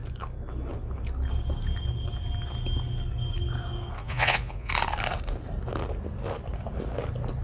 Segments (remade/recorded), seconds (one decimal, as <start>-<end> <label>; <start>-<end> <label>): 0.0-4.0 recorded; 4.0-4.7 remade; 4.7-7.4 recorded